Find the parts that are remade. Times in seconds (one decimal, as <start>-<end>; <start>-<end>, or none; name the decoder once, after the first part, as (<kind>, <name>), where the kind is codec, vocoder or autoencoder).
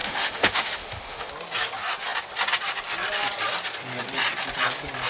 0.0-1.3 (autoencoder, DAC-VAE)